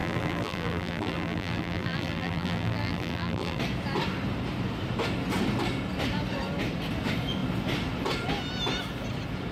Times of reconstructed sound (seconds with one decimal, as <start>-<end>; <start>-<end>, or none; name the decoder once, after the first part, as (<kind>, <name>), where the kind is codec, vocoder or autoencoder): 0.0-3.6 (vocoder, BigVGAN v2)